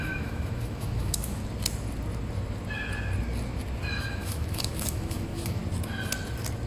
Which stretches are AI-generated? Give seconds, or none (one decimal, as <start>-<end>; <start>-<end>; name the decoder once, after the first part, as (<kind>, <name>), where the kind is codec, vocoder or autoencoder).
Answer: 0.0-1.4 (autoencoder, DAC-VAE); 4.0-5.6